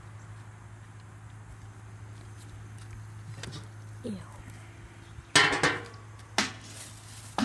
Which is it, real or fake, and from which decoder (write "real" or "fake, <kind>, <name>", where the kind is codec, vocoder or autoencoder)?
real